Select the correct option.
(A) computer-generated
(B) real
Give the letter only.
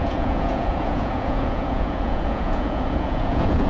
A